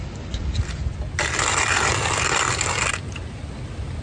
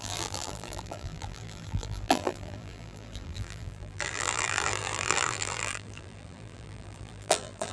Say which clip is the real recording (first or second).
first